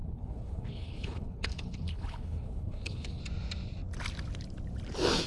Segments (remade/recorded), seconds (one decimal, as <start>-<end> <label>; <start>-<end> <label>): 0.0-3.2 remade; 3.2-5.3 recorded